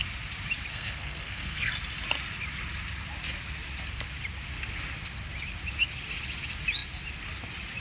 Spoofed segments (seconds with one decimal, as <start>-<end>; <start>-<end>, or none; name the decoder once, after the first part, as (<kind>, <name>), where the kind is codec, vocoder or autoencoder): 0.7-1.7 (codec, SNAC)